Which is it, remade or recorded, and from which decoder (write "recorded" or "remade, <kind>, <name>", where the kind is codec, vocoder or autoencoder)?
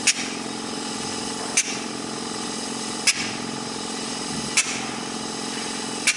recorded